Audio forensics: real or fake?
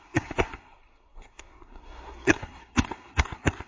fake